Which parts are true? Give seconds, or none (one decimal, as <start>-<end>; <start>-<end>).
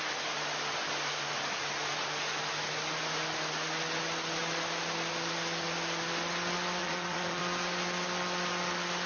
0.0-6.8; 7.4-9.1